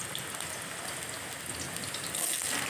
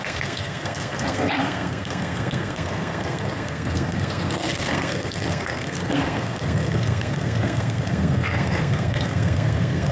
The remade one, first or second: second